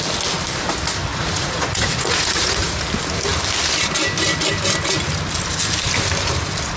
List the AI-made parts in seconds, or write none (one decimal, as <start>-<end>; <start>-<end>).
1.1-2.9